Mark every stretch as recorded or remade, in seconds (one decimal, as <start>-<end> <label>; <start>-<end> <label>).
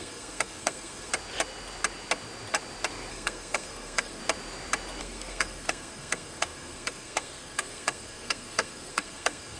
0.0-1.1 remade; 1.1-3.1 recorded; 3.1-4.2 remade; 4.2-5.0 recorded; 5.0-9.6 remade